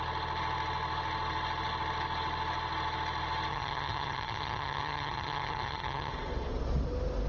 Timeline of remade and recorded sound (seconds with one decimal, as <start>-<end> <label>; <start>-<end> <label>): 0.0-3.5 recorded; 3.5-6.1 remade; 6.1-7.3 recorded